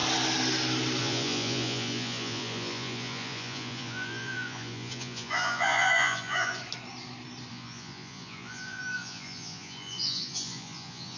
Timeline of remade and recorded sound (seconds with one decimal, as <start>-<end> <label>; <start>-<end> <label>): 0.0-1.0 recorded; 1.0-6.6 remade; 6.6-7.5 recorded; 7.5-11.2 remade